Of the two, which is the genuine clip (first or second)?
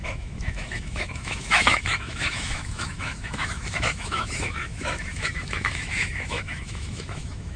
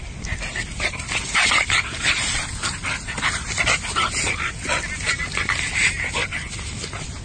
second